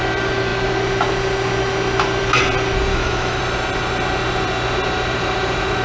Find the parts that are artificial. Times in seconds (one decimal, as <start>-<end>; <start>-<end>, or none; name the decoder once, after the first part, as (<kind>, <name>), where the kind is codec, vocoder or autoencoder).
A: 2.9-3.4 (autoencoder, DAC-VAE)